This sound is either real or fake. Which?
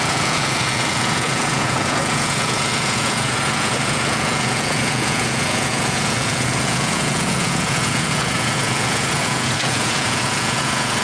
fake